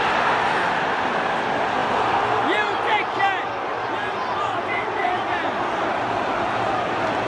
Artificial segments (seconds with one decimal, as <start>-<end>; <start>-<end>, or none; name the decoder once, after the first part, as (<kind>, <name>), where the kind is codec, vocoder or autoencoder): none